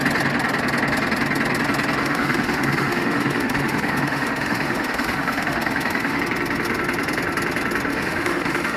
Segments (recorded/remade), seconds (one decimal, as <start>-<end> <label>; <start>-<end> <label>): 0.0-2.0 recorded; 2.0-6.2 remade; 6.2-7.9 recorded; 7.9-8.8 remade